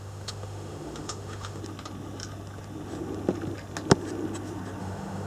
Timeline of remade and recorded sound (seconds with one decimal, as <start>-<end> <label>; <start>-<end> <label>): 0.0-1.6 remade; 1.6-4.8 recorded; 4.8-5.3 remade